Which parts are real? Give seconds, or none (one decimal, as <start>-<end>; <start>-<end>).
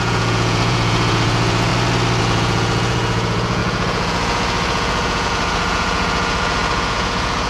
1.7-2.2